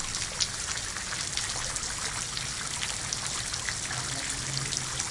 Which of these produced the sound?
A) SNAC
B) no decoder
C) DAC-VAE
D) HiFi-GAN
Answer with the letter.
B